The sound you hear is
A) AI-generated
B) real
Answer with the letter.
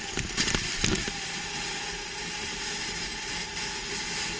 B